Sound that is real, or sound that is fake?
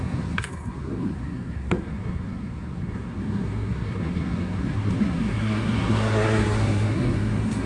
fake